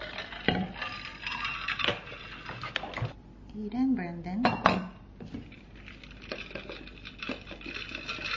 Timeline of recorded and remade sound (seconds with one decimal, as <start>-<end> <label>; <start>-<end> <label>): 0.0-8.4 recorded